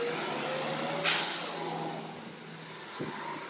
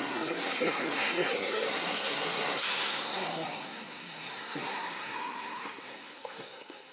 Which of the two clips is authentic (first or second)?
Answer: first